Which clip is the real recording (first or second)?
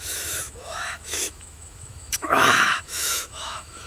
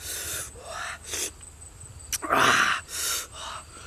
second